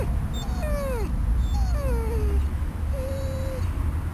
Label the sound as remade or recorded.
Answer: recorded